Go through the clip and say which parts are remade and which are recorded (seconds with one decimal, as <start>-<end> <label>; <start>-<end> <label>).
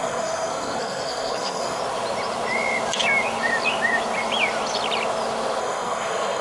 0.0-1.8 remade; 1.8-5.6 recorded; 5.6-6.4 remade